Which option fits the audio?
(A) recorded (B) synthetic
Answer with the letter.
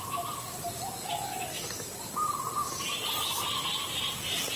A